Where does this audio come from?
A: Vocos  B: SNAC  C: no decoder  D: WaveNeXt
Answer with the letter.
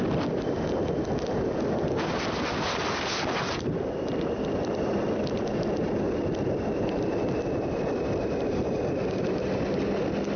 C